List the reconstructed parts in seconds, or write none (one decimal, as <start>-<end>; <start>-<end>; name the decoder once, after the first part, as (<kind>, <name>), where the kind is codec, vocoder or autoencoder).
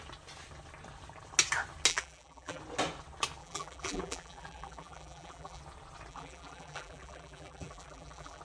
1.9-2.6 (vocoder, BigVGAN v2); 3.4-5.6; 6.1-8.4